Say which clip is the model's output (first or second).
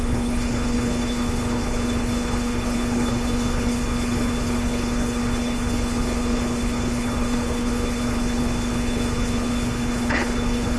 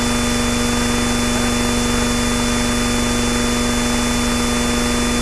first